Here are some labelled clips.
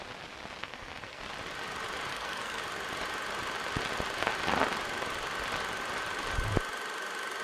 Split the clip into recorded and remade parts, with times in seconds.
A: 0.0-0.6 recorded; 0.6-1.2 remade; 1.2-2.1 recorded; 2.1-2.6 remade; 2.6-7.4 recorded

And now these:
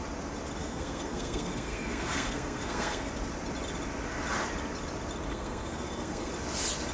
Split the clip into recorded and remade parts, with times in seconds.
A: 0.0-0.6 recorded; 0.6-3.1 remade; 3.1-5.3 recorded; 5.3-6.3 remade; 6.3-6.9 recorded

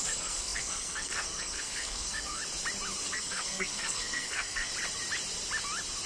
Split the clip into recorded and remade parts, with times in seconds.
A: 0.0-2.4 remade; 2.4-3.1 recorded; 3.1-4.7 remade; 4.7-6.1 recorded

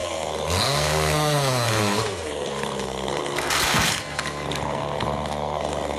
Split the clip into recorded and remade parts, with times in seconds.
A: 0.0-6.0 remade